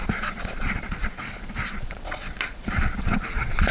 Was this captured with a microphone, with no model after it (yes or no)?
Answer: no